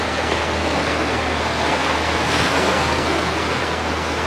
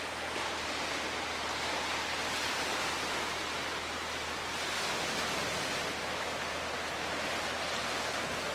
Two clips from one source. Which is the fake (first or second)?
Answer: first